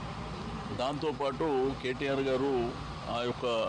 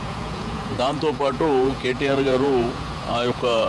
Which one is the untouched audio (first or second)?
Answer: first